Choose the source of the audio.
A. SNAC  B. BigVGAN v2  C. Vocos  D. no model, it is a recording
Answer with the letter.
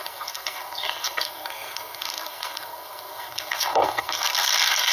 A